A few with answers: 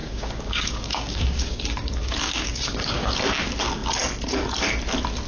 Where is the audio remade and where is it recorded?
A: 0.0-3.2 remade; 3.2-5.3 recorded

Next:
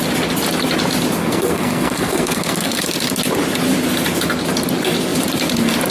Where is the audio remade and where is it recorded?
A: 0.0-1.2 recorded; 1.2-2.8 remade; 2.8-5.9 recorded

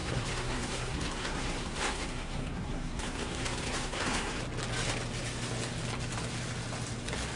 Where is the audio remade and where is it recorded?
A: 0.0-4.4 remade; 4.4-7.4 recorded

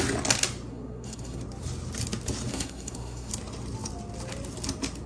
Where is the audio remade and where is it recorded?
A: 0.0-0.7 recorded; 0.7-1.4 remade; 1.4-2.5 recorded; 2.5-3.3 remade; 3.3-5.1 recorded

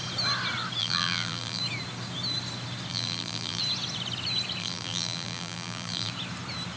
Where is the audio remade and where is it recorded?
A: 0.0-0.8 recorded; 0.8-1.6 remade; 1.6-2.9 recorded; 2.9-3.6 remade; 3.6-4.6 recorded; 4.6-6.1 remade; 6.1-6.8 recorded

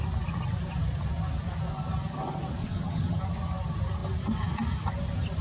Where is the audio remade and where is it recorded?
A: 0.0-2.6 recorded; 2.6-3.2 remade; 3.2-5.4 recorded

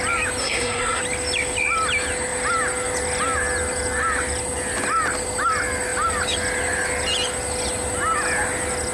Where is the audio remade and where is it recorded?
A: 0.0-0.4 recorded; 0.4-1.0 remade; 1.0-8.9 recorded

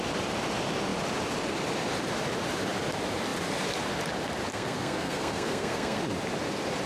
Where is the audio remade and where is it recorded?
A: 0.0-4.5 recorded; 4.5-6.0 remade; 6.0-6.9 recorded